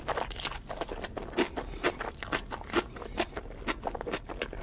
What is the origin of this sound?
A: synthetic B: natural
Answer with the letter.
B